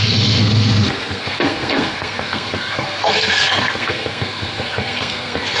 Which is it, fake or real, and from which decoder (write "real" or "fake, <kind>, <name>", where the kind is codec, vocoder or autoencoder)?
fake, codec, SNAC